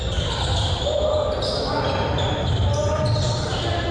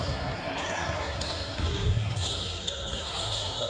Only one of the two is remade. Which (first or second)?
second